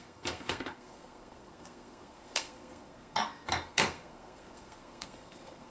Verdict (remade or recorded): remade